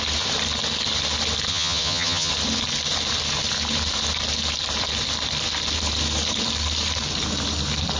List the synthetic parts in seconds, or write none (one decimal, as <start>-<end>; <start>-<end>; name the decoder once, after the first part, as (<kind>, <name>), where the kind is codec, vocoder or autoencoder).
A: 1.5-2.3 (vocoder, HiFi-GAN)